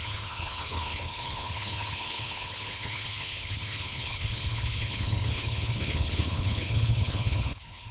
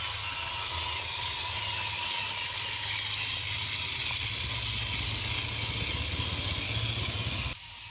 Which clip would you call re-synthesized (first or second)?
first